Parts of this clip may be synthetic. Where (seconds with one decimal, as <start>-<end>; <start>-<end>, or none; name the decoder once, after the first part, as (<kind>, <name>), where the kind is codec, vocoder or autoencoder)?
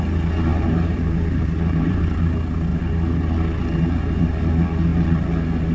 0.5-2.2 (vocoder, BigVGAN v2)